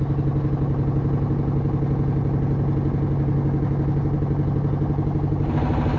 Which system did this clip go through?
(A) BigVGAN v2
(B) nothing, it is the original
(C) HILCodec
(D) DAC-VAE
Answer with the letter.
B